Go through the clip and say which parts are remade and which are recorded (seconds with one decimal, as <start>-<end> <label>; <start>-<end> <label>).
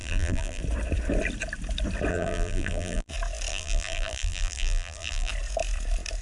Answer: 0.0-0.6 remade; 0.6-2.1 recorded; 2.1-3.1 remade; 3.1-3.5 recorded; 3.5-5.3 remade; 5.3-6.2 recorded